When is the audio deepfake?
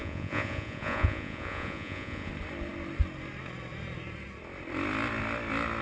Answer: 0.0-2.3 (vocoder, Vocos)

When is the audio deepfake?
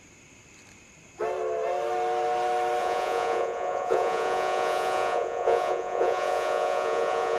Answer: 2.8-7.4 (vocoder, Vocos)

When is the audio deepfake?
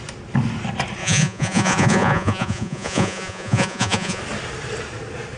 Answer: 1.0-4.2 (vocoder, Vocos)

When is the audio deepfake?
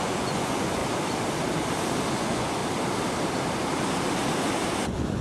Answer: 0.0-0.8 (vocoder, Vocos); 2.1-2.6; 4.8-5.2